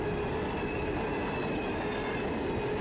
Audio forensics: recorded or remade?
recorded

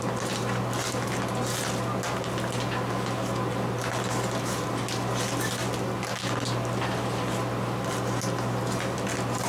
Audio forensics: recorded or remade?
recorded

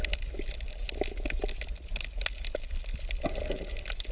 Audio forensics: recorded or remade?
recorded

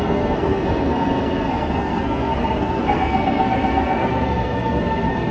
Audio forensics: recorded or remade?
remade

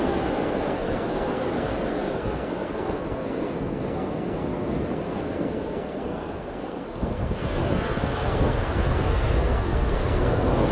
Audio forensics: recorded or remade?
remade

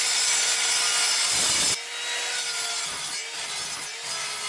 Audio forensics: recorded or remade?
recorded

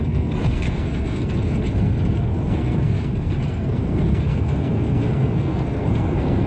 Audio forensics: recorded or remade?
remade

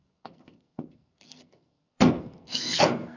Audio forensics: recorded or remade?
remade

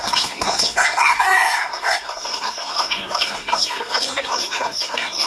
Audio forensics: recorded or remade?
remade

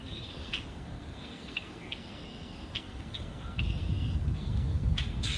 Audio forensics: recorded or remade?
remade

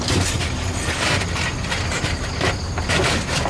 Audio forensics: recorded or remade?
recorded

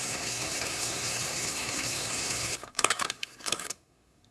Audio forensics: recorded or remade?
remade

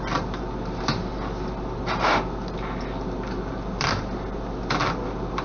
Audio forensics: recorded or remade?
recorded